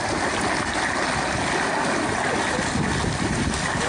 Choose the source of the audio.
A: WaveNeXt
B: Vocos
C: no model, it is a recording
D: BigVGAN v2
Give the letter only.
C